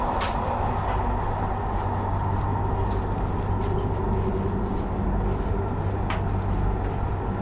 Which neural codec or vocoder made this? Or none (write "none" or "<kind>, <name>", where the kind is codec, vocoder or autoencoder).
none